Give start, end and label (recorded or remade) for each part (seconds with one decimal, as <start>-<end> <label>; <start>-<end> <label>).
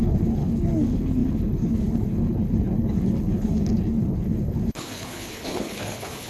0.0-6.3 remade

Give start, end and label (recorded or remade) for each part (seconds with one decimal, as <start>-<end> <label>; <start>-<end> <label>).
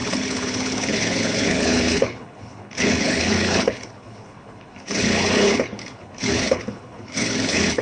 0.0-7.8 remade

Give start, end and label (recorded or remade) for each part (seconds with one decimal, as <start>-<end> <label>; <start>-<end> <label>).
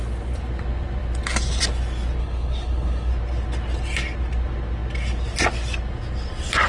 0.0-2.2 recorded; 2.2-3.1 remade; 3.1-6.7 recorded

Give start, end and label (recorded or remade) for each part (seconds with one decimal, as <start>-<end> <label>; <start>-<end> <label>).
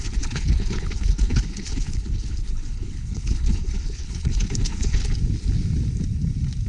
0.0-5.0 remade; 5.0-6.7 recorded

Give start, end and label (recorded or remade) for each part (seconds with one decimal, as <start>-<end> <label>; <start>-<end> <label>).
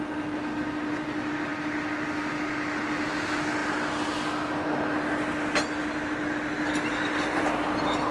0.0-8.1 recorded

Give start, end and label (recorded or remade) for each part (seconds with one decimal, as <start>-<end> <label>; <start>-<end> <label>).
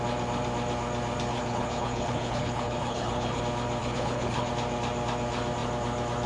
0.0-1.3 recorded; 1.3-3.4 remade; 3.4-3.8 recorded; 3.8-4.5 remade; 4.5-6.3 recorded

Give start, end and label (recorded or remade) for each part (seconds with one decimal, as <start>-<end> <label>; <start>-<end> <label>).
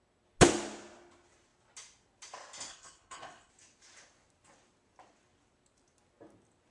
0.0-2.7 recorded; 2.7-3.5 remade; 3.5-6.7 recorded